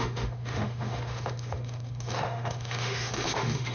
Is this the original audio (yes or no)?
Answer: no